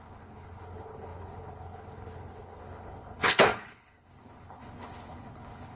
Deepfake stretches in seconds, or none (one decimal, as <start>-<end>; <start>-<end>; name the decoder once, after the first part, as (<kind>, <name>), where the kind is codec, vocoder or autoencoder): 0.0-5.8 (codec, HILCodec)